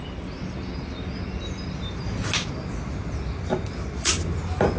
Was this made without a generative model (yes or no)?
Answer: yes